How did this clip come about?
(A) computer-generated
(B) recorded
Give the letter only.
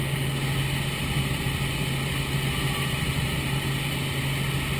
B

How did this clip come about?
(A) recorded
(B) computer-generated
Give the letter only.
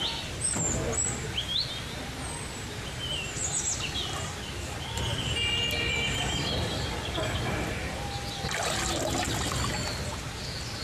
A